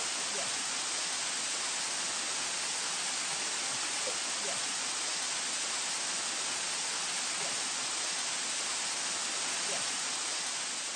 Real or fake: real